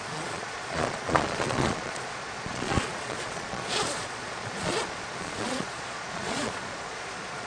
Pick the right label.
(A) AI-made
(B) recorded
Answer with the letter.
A